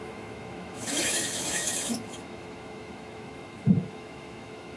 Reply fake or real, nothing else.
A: fake